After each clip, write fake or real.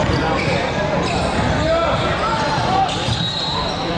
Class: real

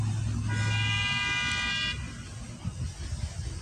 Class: real